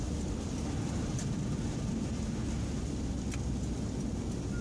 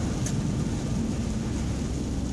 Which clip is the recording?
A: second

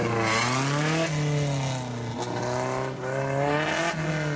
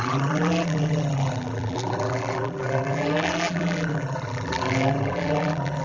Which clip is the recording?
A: first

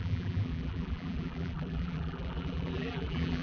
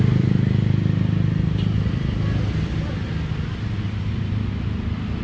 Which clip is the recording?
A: second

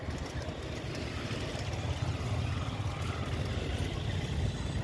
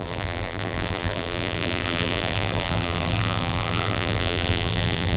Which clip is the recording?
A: first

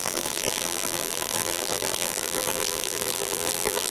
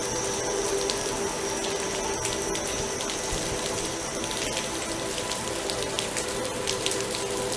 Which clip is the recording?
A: second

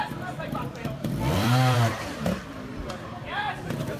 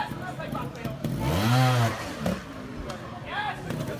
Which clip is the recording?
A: second